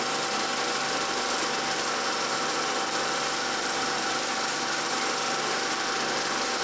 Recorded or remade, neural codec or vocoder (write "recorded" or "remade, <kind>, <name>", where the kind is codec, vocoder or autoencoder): remade, vocoder, BigVGAN v2